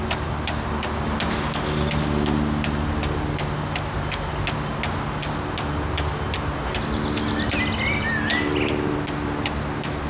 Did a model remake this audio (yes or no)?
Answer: no